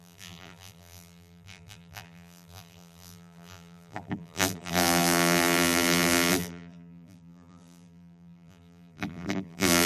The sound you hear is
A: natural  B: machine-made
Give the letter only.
B